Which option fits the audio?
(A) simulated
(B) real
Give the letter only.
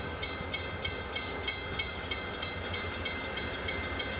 B